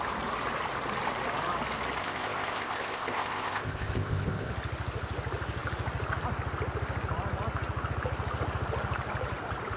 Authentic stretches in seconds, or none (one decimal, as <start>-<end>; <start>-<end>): 0.0-2.0; 4.5-9.8